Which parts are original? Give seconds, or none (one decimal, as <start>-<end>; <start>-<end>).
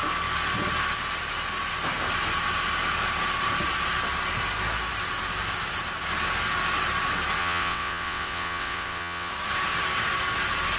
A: 0.0-7.4; 9.3-10.8